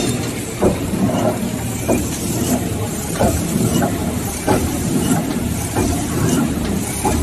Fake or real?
fake